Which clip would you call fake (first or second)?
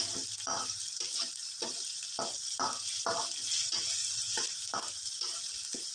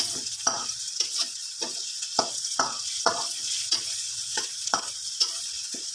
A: second